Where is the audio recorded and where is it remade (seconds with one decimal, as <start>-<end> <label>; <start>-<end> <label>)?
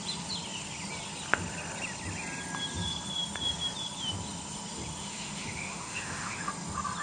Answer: 0.0-5.0 recorded; 5.0-6.5 remade; 6.5-7.0 recorded